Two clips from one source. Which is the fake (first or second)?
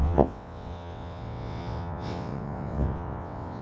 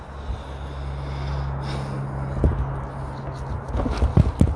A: first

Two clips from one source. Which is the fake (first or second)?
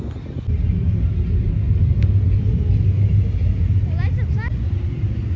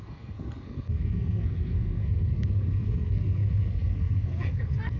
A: second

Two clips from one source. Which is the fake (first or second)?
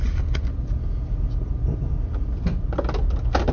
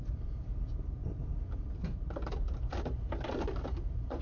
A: second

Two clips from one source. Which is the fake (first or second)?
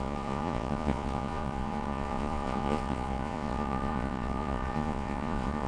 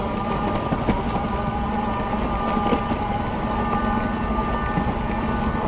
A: first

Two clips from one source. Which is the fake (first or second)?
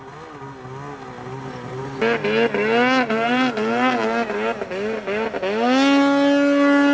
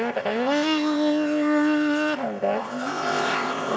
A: second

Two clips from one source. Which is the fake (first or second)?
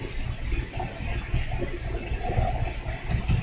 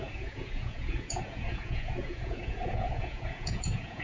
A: second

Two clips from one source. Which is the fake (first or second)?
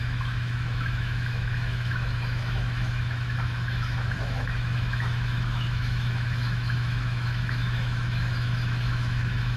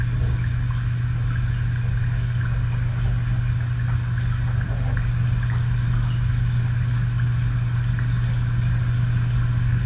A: first